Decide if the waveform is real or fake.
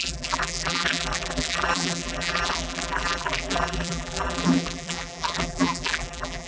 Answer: fake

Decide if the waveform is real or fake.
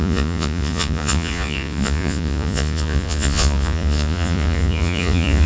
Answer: fake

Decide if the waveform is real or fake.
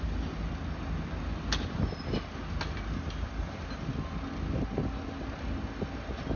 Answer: real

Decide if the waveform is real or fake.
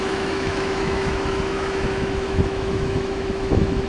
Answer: fake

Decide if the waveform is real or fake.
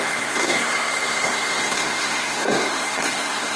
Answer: fake